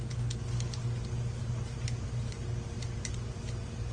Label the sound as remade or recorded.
recorded